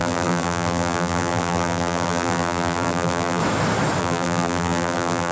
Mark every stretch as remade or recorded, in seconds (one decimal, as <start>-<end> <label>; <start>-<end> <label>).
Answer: 0.0-3.4 remade; 3.4-4.0 recorded; 4.0-5.3 remade

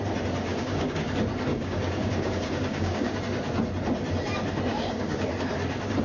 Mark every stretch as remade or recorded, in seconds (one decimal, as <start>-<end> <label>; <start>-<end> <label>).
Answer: 0.0-0.5 recorded; 0.5-1.1 remade; 1.1-1.5 recorded; 1.5-3.2 remade; 3.2-4.7 recorded; 4.7-5.3 remade; 5.3-6.0 recorded

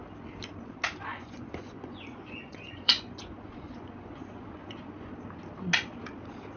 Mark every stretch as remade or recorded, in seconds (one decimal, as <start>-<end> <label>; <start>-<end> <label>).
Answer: 0.0-1.1 recorded; 1.1-5.1 remade; 5.1-6.6 recorded

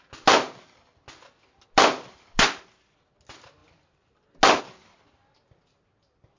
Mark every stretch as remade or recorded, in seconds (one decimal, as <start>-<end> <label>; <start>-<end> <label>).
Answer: 0.0-6.4 recorded

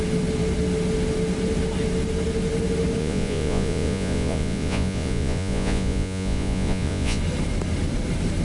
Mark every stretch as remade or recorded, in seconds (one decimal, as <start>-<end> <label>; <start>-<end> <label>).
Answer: 0.0-3.0 recorded; 3.0-7.2 remade; 7.2-8.4 recorded

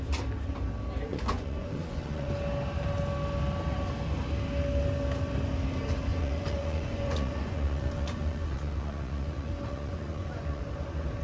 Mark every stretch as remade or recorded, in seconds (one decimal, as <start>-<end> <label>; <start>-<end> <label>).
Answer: 0.0-1.1 recorded; 1.1-2.3 remade; 2.3-6.1 recorded; 6.1-10.6 remade; 10.6-11.2 recorded